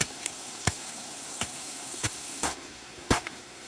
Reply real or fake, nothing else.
fake